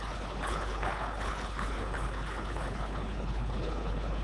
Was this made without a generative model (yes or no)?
no